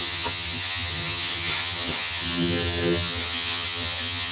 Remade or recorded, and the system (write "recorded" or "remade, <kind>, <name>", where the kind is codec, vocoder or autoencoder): remade, vocoder, HiFi-GAN